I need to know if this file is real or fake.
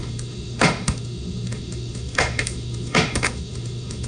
fake